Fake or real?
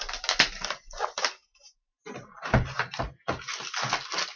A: real